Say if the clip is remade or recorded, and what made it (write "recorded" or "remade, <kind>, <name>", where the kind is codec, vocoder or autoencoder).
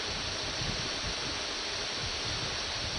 recorded